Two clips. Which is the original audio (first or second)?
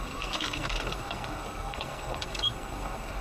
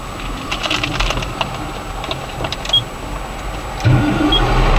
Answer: second